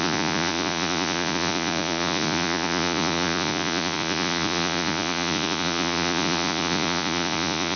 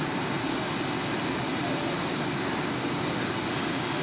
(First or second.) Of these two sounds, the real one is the second